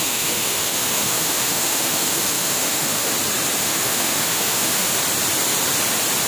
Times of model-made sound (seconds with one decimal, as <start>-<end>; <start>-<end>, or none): 0.0-3.1; 3.6-4.9